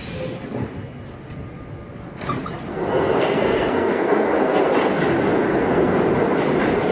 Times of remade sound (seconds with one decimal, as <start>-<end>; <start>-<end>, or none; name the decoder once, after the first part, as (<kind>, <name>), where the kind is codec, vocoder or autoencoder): 2.7-4.7 (codec, SNAC); 5.5-6.0